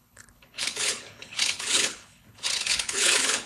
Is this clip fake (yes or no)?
yes